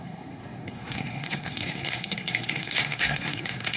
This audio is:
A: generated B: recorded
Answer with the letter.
A